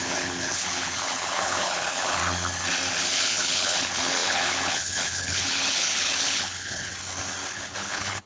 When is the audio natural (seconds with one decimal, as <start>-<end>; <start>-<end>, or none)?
2.2-2.9; 6.9-7.5